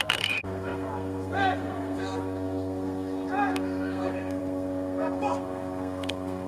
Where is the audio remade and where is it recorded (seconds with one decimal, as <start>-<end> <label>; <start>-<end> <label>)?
0.0-6.5 remade